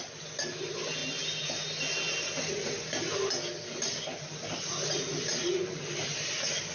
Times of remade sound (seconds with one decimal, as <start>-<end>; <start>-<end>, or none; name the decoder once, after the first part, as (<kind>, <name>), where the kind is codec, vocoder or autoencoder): none